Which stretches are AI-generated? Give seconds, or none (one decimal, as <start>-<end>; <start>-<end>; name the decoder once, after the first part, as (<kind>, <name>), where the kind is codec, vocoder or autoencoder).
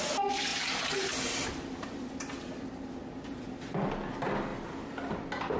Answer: none